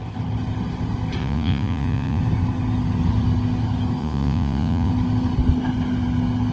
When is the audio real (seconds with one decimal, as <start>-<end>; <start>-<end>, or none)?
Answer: 0.0-1.2; 2.2-4.0; 4.9-6.5